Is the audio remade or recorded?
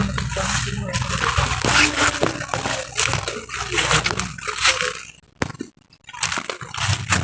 recorded